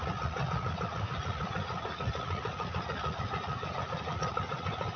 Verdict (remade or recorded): remade